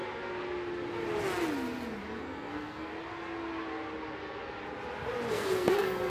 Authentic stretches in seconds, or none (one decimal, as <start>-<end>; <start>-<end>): 0.0-2.2; 2.9-5.3

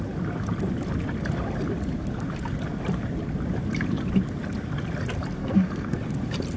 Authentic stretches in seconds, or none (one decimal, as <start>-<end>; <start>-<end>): 0.0-5.4; 6.0-6.6

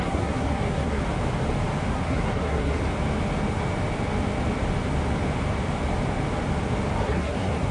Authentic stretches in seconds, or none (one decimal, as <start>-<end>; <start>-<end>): 1.0-1.9; 2.8-7.0